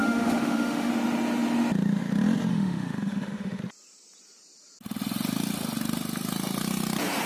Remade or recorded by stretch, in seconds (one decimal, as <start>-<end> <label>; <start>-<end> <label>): 0.0-0.9 remade; 0.9-2.5 recorded; 2.5-3.6 remade; 3.6-7.3 recorded